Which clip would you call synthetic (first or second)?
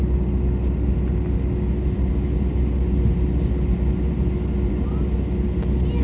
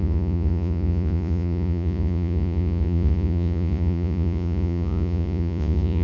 second